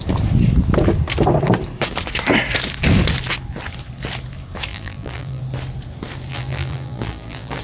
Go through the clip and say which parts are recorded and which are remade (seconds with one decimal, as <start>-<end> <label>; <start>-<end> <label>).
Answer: 0.0-4.7 recorded; 4.7-5.4 remade; 5.4-6.3 recorded; 6.3-7.6 remade